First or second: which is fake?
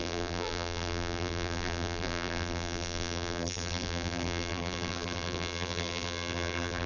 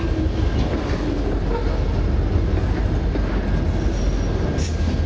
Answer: first